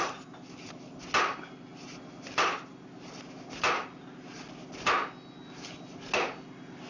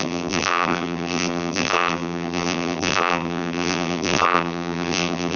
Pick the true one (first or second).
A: first